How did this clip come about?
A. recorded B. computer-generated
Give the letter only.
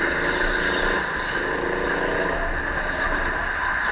A